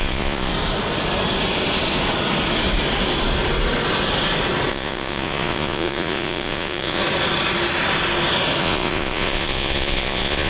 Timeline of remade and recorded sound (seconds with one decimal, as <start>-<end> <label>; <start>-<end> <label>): 0.0-0.5 remade; 0.5-4.7 recorded; 4.7-7.0 remade; 7.0-8.6 recorded; 8.6-10.5 remade